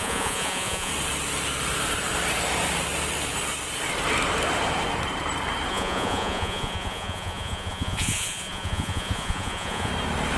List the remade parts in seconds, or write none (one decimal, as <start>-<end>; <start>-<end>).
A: 0.0-0.9; 5.7-9.9